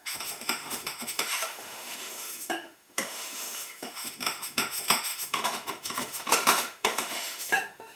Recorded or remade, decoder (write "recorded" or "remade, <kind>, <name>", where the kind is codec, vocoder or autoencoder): remade, autoencoder, DAC-VAE